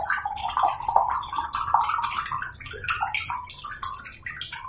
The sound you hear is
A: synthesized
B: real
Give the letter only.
B